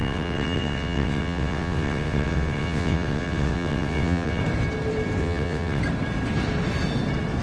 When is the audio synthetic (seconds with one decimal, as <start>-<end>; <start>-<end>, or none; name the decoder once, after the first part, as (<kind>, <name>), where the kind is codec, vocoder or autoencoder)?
0.0-4.4 (vocoder, WaveNeXt); 5.2-5.8